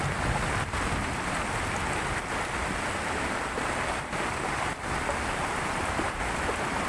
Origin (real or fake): real